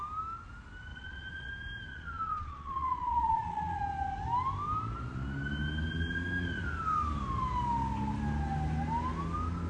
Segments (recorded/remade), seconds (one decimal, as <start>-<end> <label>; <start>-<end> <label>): 0.0-0.9 recorded; 0.9-1.5 remade; 1.5-1.9 recorded; 1.9-3.8 remade; 3.8-9.7 recorded

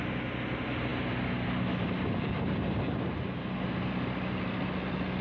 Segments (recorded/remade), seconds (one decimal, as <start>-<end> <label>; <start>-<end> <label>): 0.0-5.2 recorded

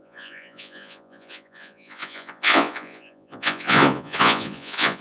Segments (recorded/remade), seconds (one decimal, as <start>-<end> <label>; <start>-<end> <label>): 0.0-5.0 remade

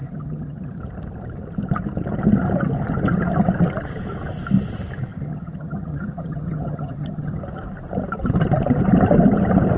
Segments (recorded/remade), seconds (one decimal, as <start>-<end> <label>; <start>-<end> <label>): 0.0-0.8 remade; 0.8-5.1 recorded; 5.1-7.4 remade; 7.4-9.8 recorded

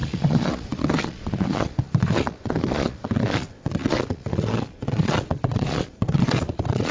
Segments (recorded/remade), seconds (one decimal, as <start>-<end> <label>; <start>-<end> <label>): 0.0-6.9 remade